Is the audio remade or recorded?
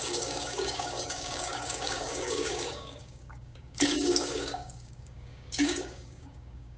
remade